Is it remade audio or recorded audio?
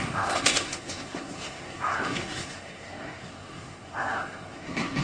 remade